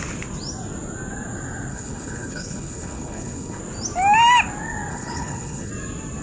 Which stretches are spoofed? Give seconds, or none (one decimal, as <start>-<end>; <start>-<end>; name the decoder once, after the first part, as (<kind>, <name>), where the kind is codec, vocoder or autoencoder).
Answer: 1.7-3.6 (codec, HILCodec); 4.9-5.7